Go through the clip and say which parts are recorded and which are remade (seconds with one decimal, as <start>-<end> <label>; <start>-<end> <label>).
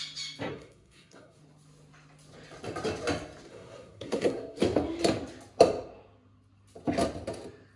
0.0-0.5 recorded; 0.5-1.4 remade; 1.4-3.5 recorded; 3.5-4.6 remade; 4.6-7.8 recorded